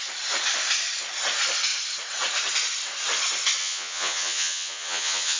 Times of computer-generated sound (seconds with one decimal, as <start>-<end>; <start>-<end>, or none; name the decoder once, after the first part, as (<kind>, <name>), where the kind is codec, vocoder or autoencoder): 3.6-5.4 (vocoder, Vocos)

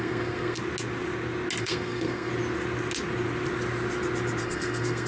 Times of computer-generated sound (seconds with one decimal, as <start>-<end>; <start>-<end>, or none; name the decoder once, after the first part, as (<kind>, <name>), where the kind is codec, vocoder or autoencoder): 0.0-0.6 (codec, SNAC); 1.6-2.3; 4.4-5.1